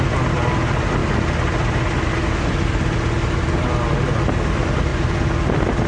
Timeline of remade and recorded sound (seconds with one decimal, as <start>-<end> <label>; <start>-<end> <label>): 0.0-5.9 recorded